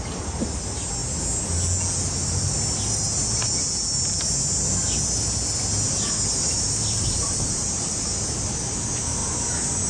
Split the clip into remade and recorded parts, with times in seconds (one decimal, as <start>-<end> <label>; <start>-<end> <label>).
0.0-7.2 recorded; 7.2-8.1 remade; 8.1-9.9 recorded